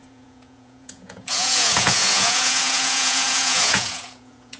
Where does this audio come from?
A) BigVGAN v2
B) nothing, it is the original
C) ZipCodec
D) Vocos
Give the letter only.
D